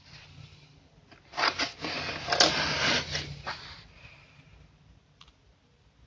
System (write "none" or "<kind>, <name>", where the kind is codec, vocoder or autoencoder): none